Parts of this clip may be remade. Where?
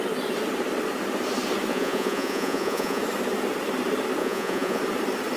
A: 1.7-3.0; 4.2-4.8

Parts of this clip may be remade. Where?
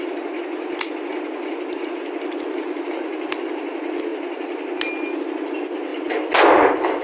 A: none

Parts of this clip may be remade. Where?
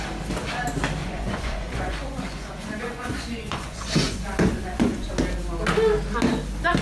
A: 1.0-5.1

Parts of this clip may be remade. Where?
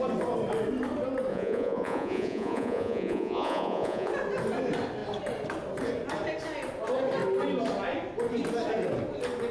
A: 1.3-4.1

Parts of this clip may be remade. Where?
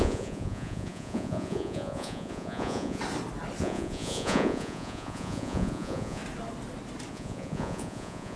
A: 0.0-3.0; 3.6-6.2; 7.1-8.4